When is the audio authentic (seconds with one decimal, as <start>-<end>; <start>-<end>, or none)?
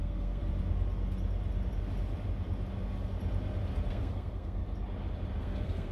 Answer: 0.4-3.9; 4.6-5.4